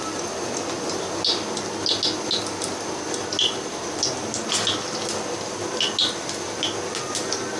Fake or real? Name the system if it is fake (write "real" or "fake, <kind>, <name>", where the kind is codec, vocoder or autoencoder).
real